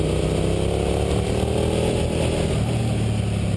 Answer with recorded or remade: recorded